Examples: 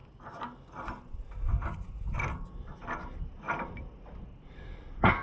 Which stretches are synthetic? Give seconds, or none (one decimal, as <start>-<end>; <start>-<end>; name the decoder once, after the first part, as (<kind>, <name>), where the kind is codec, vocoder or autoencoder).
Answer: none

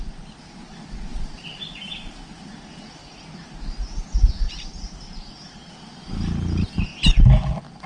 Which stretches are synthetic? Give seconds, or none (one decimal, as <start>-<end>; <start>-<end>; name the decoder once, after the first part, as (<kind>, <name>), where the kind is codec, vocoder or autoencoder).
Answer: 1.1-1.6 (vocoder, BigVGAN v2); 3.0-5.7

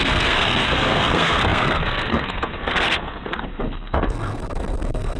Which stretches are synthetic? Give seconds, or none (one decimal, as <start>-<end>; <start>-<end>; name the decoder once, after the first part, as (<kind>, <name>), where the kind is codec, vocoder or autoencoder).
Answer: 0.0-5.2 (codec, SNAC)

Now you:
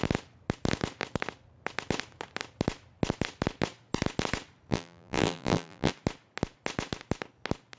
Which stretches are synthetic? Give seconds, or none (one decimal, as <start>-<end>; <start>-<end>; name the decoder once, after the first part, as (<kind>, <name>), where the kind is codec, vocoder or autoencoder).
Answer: 4.7-5.9 (vocoder, BigVGAN v2)

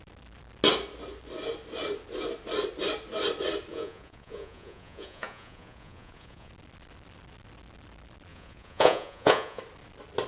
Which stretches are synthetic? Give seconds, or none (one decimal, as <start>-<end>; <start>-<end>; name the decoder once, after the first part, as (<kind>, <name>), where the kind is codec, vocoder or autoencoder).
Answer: 3.7-6.5 (vocoder, Vocos); 8.3-9.6